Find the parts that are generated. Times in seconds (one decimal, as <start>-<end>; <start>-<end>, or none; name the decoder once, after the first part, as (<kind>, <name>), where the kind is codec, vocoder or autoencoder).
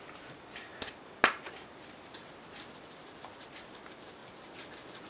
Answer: none